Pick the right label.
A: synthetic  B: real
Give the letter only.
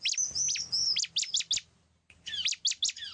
B